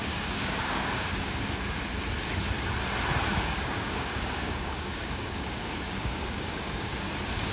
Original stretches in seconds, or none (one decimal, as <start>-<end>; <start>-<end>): 1.8-3.3; 7.1-7.5